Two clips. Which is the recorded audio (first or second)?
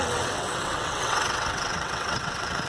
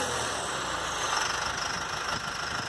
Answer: second